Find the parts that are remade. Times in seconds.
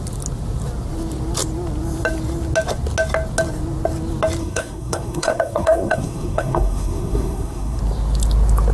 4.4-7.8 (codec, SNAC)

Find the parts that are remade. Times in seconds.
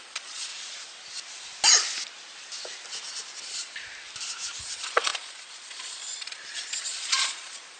0.0-0.5 (vocoder, Vocos); 4.6-7.8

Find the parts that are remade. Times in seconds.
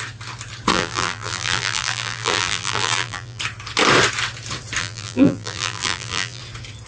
0.7-3.4 (vocoder, BigVGAN v2); 4.8-6.4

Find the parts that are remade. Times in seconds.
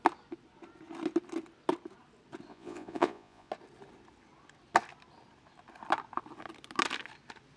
2.5-3.5 (vocoder, Vocos)